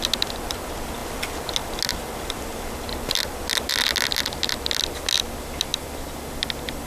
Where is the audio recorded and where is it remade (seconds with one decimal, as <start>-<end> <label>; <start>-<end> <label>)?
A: 0.0-6.9 recorded